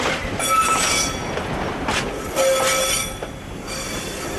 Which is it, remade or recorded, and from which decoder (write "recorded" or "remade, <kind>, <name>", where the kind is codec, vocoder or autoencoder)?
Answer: recorded